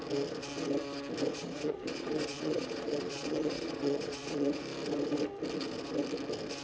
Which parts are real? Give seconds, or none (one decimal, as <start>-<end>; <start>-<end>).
0.0-1.3; 4.6-6.6